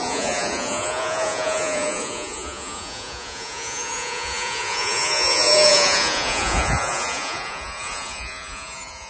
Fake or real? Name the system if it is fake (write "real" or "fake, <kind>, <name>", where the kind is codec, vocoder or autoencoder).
fake, vocoder, Vocos